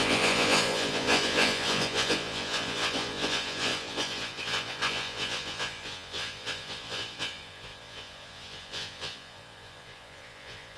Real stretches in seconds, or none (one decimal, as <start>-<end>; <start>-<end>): none